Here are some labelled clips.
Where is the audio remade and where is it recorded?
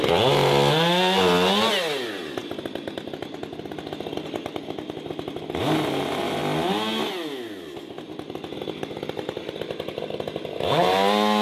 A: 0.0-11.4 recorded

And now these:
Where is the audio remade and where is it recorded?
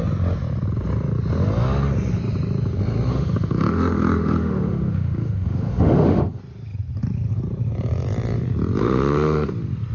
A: 0.0-3.1 recorded; 3.1-6.4 remade; 6.4-8.8 recorded; 8.8-9.5 remade; 9.5-9.9 recorded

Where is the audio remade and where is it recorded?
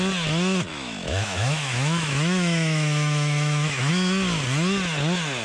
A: 0.0-0.7 recorded; 0.7-3.9 remade; 3.9-5.4 recorded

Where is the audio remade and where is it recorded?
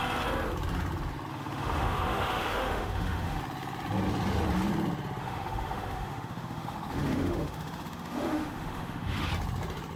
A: 0.0-1.3 recorded; 1.3-3.4 remade; 3.4-5.2 recorded; 5.2-9.3 remade; 9.3-10.0 recorded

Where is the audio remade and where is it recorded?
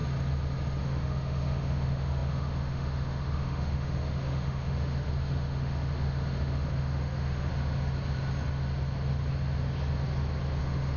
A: 0.0-0.8 recorded; 0.8-7.5 remade; 7.5-10.6 recorded; 10.6-11.0 remade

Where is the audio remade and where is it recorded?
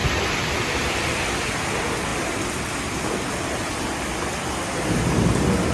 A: 0.0-5.7 recorded